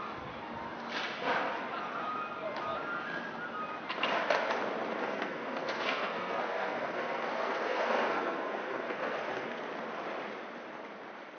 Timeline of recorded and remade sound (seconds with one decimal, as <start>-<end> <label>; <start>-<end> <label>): 0.0-4.9 recorded; 4.9-9.6 remade; 9.6-11.4 recorded